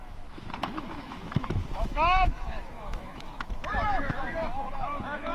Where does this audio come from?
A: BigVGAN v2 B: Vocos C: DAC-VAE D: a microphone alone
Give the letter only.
C